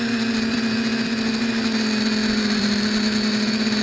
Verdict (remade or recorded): remade